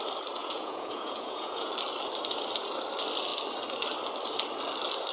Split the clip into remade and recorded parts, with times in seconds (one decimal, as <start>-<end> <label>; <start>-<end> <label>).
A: 0.0-0.4 recorded; 0.4-1.7 remade; 1.7-5.1 recorded